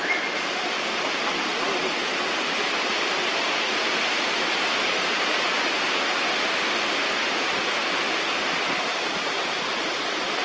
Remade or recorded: recorded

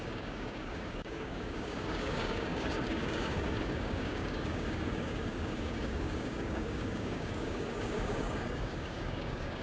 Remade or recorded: remade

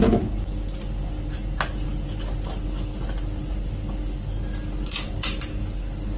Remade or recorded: recorded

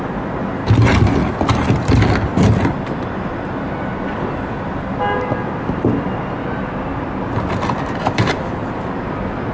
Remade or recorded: recorded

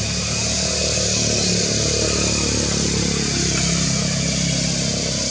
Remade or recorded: recorded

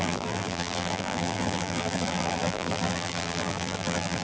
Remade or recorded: remade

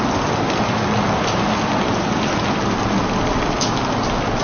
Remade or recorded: recorded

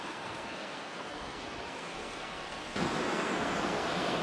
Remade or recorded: remade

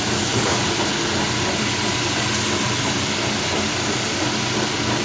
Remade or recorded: recorded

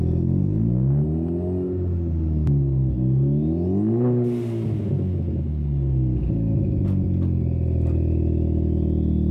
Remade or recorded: recorded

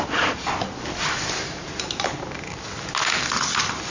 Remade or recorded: recorded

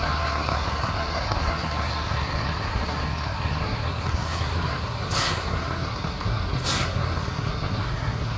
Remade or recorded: remade